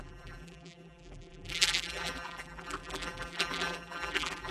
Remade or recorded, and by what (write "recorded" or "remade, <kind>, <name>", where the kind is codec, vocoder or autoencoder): remade, vocoder, BigVGAN v2